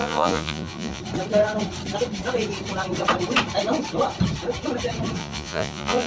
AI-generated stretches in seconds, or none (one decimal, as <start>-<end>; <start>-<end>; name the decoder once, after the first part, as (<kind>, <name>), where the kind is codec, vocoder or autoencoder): 0.0-1.0 (vocoder, Vocos); 5.2-6.1